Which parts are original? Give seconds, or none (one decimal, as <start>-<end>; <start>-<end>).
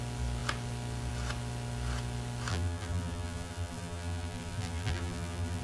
0.0-2.5